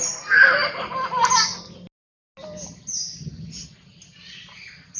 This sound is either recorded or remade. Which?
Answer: recorded